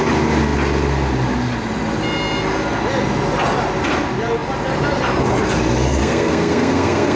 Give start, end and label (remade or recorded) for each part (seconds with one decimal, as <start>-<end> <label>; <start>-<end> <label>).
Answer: 0.0-6.0 recorded; 6.0-7.2 remade